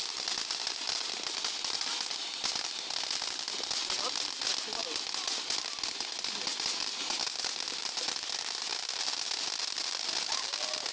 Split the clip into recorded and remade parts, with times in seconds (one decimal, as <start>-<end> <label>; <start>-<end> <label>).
0.0-10.9 recorded